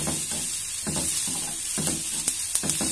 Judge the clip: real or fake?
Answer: real